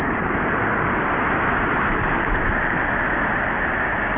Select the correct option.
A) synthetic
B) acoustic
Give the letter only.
B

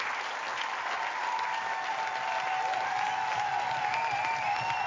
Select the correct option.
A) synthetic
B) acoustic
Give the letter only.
B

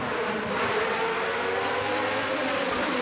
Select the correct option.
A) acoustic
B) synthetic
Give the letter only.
A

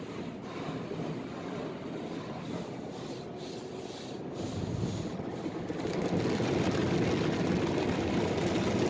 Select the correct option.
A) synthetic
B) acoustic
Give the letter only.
B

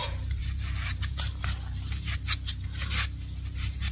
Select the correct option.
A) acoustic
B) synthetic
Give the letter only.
A